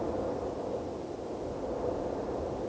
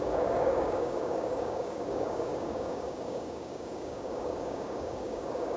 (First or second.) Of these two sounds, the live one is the first